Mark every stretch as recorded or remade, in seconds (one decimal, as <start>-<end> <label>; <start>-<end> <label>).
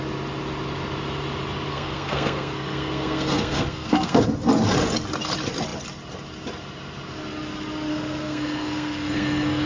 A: 0.0-1.7 recorded; 1.7-4.2 remade; 4.2-7.9 recorded; 7.9-9.7 remade